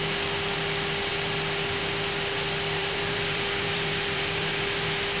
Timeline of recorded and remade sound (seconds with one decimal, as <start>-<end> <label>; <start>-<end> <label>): 0.0-2.8 recorded; 2.8-4.5 remade; 4.5-5.2 recorded